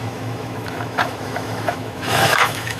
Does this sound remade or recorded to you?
remade